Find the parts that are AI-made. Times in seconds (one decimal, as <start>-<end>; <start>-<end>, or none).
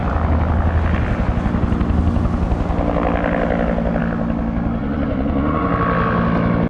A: 4.8-5.7